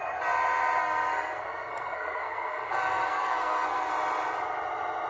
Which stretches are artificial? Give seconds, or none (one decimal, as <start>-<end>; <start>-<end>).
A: 0.8-3.9